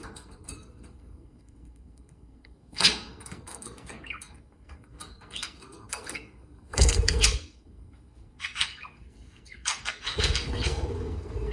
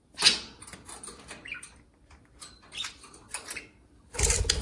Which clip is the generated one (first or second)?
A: first